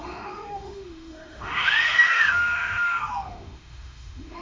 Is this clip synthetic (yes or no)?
yes